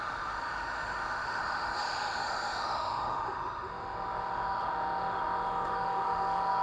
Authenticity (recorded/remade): remade